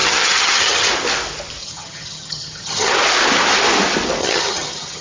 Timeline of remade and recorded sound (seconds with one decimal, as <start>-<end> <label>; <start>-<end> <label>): 0.0-0.9 remade; 0.9-1.6 recorded; 1.6-2.9 remade; 2.9-4.2 recorded; 4.2-5.0 remade